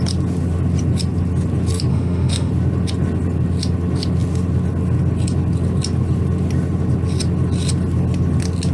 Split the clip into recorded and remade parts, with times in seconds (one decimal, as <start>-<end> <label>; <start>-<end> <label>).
0.0-1.9 recorded; 1.9-2.5 remade; 2.5-8.7 recorded